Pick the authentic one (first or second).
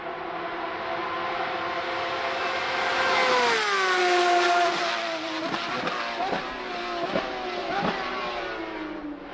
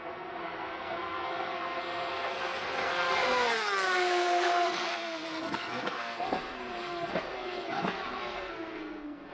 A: first